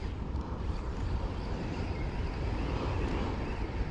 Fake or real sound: real